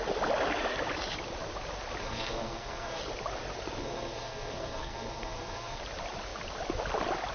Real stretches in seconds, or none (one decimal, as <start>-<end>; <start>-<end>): 0.0-2.0; 3.0-3.8; 5.8-7.3